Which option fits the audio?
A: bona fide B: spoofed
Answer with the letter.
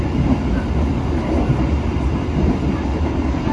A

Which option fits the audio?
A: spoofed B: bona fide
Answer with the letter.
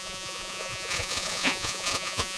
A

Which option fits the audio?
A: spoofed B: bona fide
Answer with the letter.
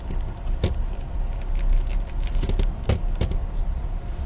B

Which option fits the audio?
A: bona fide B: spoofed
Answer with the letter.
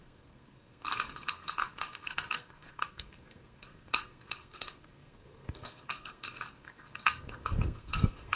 B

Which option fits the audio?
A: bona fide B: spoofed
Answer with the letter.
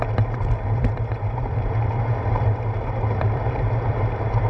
B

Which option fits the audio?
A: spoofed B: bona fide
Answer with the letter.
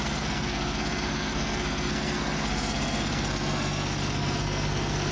A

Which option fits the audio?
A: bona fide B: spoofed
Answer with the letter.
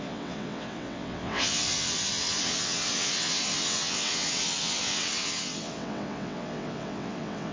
B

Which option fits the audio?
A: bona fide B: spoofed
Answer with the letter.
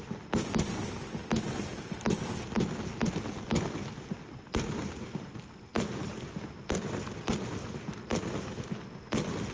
A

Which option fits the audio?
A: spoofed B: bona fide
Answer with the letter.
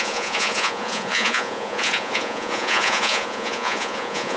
A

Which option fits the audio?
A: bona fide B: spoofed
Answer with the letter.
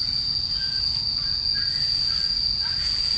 A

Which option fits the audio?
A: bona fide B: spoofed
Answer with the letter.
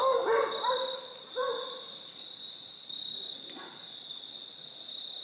A